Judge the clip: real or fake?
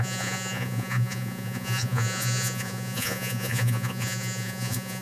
fake